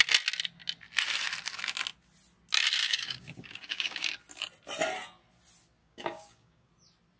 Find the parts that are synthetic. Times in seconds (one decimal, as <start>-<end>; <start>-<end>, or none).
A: 2.8-4.1; 5.8-6.7